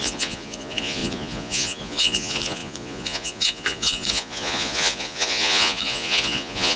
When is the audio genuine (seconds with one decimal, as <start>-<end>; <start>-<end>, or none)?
none